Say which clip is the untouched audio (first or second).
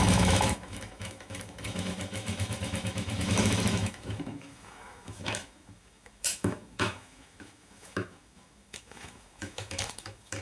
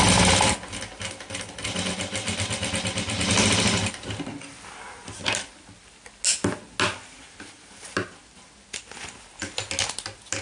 second